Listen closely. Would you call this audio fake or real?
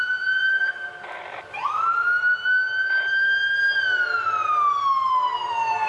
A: real